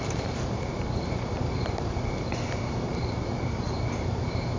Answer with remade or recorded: remade